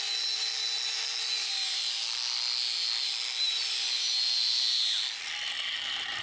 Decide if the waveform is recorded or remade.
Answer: recorded